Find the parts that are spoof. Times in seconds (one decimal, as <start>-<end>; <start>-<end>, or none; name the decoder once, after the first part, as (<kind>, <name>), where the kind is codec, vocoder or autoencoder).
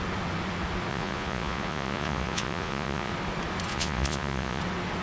0.9-3.1 (vocoder, Vocos); 3.7-4.6